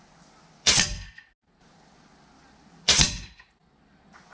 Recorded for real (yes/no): yes